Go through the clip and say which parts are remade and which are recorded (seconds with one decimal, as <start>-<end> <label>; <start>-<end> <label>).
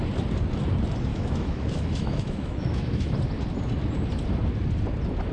0.0-1.1 recorded; 1.1-3.1 remade; 3.1-5.3 recorded